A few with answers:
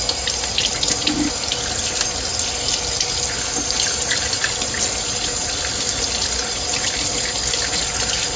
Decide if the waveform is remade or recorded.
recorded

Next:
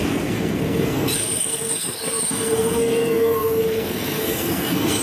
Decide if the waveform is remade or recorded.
remade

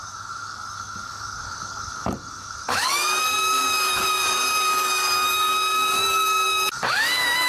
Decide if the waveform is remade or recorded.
remade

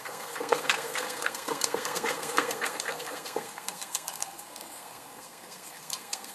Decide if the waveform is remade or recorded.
remade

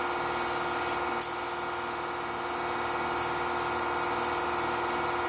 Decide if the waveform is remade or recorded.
recorded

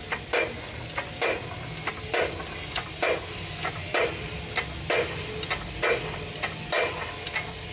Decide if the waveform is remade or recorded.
recorded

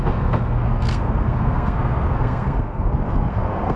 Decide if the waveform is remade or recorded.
remade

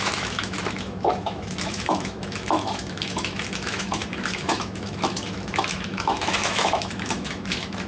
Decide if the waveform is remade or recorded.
remade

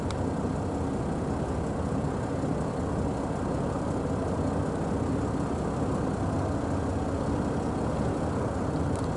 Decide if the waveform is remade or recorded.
recorded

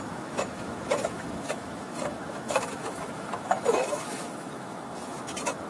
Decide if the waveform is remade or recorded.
remade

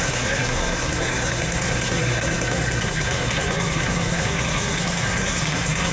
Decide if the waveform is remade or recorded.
remade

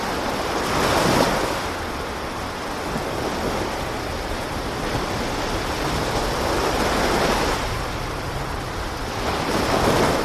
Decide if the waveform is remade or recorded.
recorded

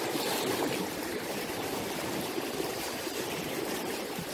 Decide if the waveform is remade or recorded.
remade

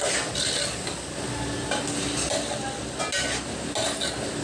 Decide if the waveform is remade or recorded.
recorded